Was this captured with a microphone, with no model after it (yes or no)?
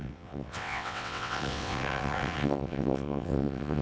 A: no